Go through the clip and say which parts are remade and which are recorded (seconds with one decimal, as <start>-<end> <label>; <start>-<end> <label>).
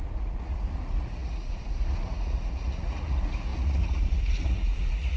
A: 0.0-5.2 remade